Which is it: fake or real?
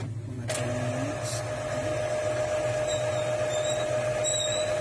real